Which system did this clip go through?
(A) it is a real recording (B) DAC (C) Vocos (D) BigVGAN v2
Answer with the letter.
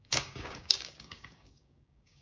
B